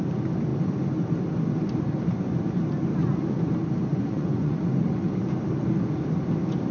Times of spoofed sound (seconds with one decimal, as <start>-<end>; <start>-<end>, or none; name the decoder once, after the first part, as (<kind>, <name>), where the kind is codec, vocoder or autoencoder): 3.0-3.5 (vocoder, Vocos); 3.9-4.8